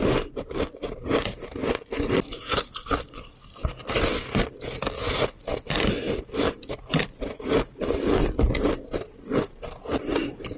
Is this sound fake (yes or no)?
no